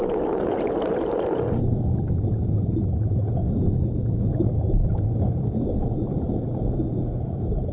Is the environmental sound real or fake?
real